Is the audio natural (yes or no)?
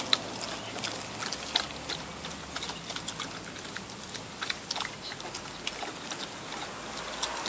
yes